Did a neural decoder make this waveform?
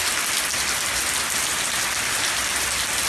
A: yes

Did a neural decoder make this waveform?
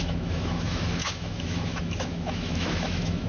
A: yes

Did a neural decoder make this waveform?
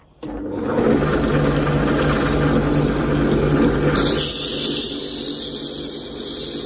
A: no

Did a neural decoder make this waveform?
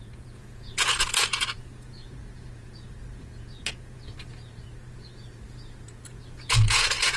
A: yes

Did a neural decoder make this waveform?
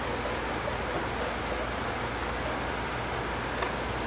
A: no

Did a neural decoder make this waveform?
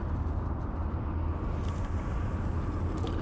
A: no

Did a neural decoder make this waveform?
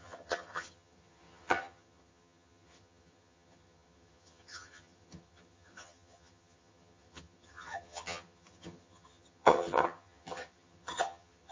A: yes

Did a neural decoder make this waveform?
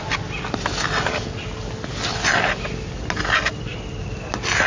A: no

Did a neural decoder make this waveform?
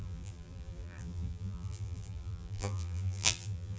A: yes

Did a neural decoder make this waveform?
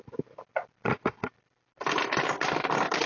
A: no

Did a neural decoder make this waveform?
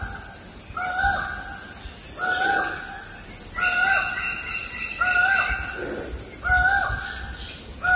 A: no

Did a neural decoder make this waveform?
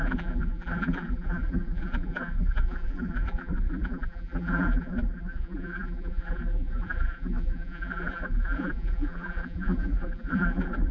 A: yes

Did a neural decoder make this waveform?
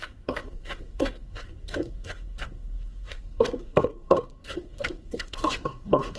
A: yes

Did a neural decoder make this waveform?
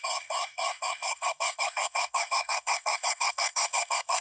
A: yes